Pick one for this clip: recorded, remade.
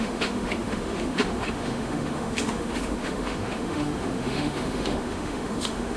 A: remade